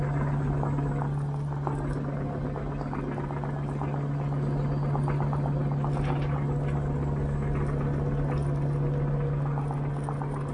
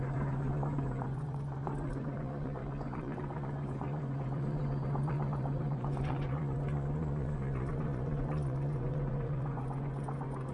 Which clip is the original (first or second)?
first